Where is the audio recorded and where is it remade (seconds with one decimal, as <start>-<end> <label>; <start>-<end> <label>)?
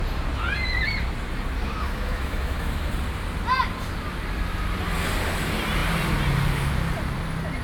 0.0-1.6 recorded; 1.6-2.9 remade; 2.9-7.6 recorded